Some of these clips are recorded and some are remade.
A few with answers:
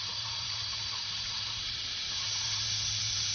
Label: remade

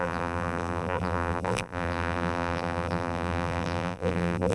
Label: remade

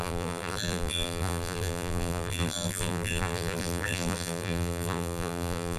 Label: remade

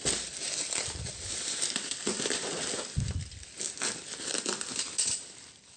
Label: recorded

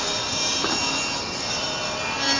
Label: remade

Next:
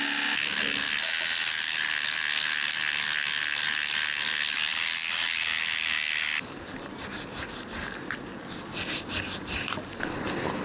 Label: recorded